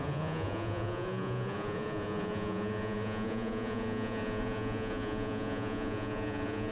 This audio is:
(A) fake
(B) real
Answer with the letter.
A